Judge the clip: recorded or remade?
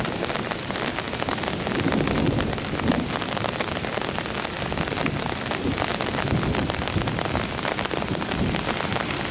recorded